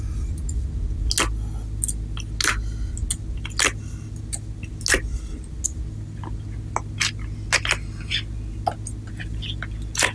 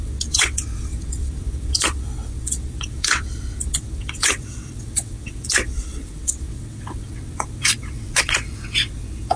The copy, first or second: second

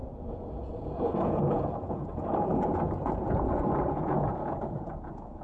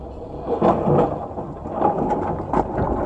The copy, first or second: first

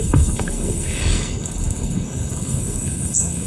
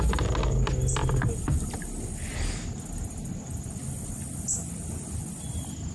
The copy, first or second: first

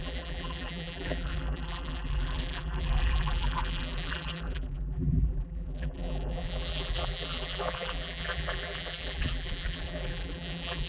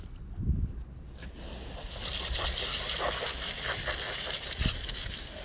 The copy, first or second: first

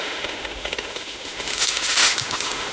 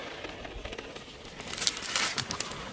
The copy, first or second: first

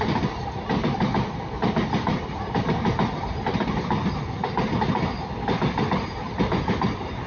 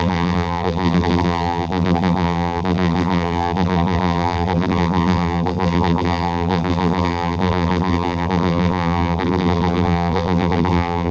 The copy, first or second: second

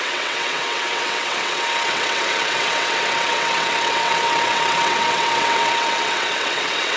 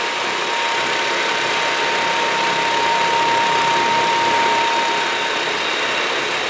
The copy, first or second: first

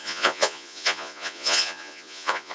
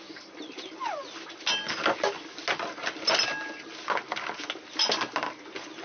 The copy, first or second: first